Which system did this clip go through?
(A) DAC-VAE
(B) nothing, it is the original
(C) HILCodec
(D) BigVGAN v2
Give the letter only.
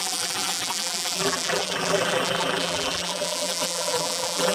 D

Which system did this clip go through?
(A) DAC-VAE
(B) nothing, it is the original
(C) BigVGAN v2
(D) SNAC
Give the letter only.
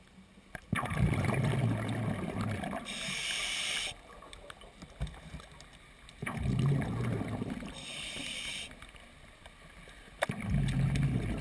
B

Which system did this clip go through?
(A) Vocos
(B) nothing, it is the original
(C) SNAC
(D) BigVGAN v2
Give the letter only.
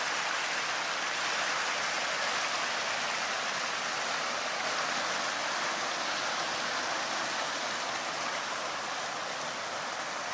B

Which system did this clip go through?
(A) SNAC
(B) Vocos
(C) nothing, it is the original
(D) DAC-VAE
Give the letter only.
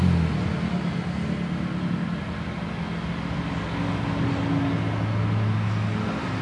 C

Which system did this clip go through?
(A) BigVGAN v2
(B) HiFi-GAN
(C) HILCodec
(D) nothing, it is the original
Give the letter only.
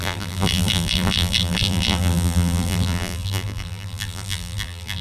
A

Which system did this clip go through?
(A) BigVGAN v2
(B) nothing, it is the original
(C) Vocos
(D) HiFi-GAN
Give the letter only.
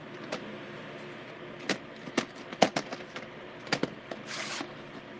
B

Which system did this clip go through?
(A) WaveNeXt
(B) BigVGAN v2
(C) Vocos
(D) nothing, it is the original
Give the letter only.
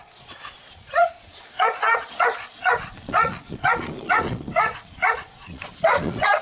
C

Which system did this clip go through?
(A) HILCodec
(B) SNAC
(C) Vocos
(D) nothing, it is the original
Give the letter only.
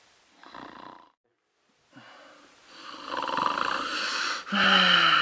D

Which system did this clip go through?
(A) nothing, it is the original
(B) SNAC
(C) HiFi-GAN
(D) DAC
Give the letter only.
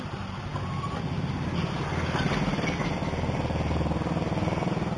A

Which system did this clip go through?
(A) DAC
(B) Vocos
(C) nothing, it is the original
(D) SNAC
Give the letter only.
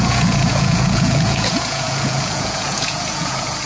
B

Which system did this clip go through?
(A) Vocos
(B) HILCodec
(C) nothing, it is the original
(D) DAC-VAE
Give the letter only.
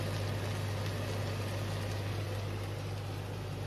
C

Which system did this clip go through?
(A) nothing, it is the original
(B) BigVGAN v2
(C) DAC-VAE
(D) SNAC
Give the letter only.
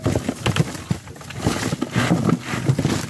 A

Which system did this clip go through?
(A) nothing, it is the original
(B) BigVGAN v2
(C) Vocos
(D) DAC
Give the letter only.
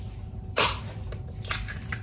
B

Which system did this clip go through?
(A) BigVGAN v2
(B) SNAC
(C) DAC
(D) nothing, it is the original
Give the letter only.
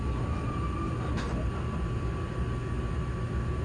D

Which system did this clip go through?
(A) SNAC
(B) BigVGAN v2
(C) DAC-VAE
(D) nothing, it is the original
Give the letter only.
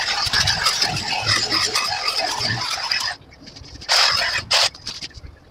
D